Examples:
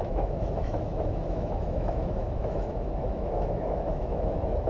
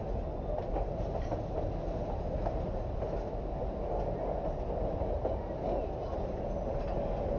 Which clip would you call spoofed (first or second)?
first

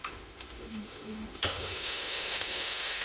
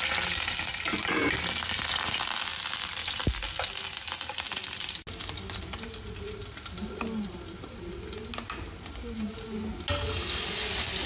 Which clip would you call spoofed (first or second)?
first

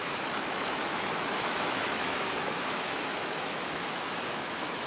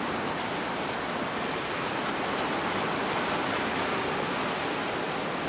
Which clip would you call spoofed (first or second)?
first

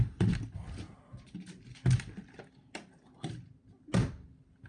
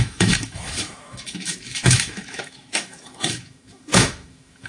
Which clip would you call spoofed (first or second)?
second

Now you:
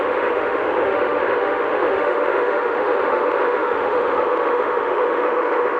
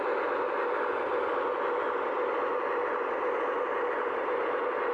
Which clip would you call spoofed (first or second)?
first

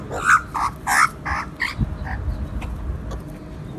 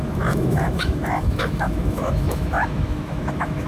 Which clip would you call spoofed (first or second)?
second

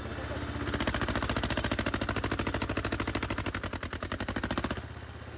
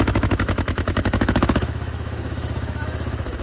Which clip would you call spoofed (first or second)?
second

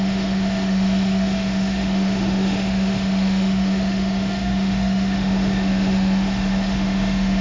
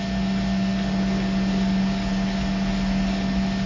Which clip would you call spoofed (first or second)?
first